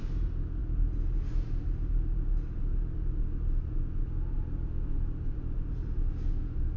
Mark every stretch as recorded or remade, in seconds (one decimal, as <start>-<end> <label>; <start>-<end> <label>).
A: 0.0-6.8 recorded